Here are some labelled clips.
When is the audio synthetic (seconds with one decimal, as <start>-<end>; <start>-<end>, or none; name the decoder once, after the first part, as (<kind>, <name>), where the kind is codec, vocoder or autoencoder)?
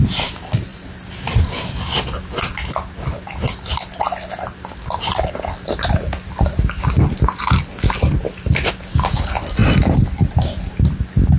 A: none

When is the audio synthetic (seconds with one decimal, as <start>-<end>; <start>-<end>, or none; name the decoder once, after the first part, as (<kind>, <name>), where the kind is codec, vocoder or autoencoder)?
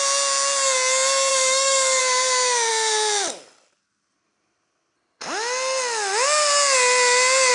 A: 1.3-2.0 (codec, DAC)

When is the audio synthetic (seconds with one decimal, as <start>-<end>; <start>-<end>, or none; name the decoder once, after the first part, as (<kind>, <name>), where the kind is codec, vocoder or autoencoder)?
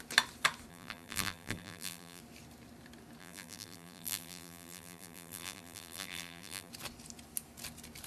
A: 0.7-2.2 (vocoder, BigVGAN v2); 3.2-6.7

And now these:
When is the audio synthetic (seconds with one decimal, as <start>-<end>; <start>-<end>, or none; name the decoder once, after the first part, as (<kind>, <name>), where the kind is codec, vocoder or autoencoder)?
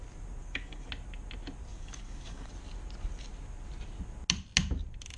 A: 0.4-0.9 (codec, DAC); 1.7-2.5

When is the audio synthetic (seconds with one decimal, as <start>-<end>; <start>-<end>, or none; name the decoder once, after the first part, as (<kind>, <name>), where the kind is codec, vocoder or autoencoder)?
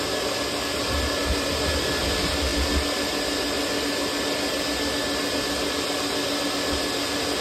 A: none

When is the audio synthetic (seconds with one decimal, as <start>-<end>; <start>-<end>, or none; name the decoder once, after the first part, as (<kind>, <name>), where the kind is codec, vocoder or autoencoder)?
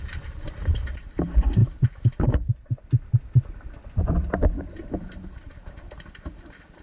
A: 0.0-1.6 (vocoder, BigVGAN v2); 4.6-6.8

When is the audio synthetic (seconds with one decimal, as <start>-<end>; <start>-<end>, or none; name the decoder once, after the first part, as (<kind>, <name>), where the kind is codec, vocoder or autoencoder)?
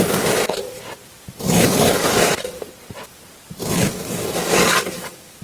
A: 2.0-2.5 (codec, DAC); 4.0-5.4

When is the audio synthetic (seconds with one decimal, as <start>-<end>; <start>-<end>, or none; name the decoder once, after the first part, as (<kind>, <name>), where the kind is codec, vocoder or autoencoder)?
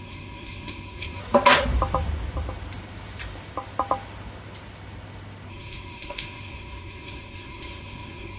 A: 0.0-1.2 (codec, SNAC); 5.5-8.4